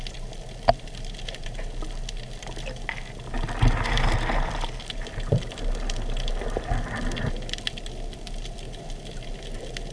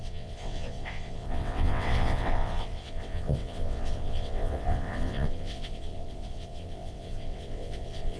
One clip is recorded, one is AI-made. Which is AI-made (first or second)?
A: second